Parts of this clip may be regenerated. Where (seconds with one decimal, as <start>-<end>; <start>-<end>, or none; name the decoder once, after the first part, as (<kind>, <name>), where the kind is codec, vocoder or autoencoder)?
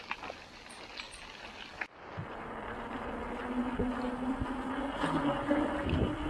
none